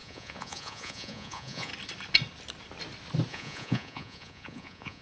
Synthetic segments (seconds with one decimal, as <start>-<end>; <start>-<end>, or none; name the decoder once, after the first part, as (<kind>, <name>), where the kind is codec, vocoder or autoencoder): 0.0-1.7 (vocoder, Vocos); 3.3-5.0